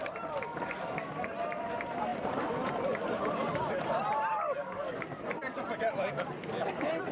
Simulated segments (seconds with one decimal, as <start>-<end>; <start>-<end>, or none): 0.5-1.2; 4.6-5.2